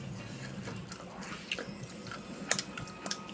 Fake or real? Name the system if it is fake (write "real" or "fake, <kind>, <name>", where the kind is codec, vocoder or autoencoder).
real